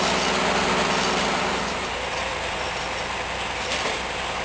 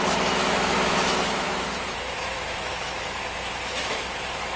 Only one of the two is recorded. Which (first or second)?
first